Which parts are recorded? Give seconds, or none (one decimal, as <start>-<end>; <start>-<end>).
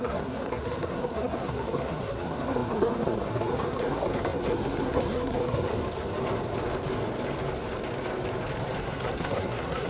5.7-8.8